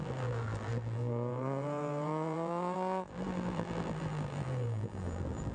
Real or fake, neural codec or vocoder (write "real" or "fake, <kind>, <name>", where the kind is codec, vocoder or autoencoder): fake, vocoder, BigVGAN v2